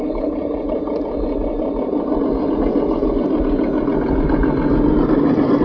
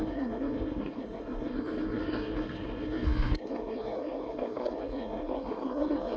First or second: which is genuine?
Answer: first